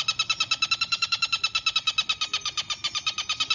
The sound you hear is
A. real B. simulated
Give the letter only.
A